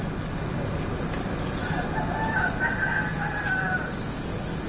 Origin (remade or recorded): recorded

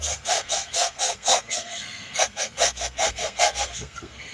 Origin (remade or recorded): remade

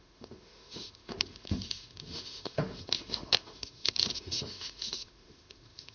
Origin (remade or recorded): remade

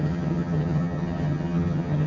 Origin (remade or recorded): remade